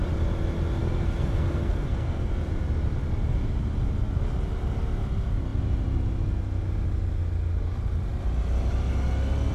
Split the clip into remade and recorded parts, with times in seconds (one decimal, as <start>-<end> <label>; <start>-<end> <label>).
0.0-0.8 recorded; 0.8-2.3 remade; 2.3-9.5 recorded